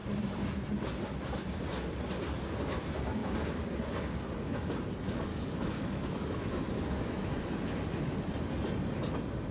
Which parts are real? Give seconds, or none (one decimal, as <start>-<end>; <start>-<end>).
0.0-5.3; 8.3-9.5